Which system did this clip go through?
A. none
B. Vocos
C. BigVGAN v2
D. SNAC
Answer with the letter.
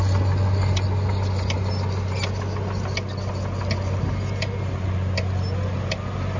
A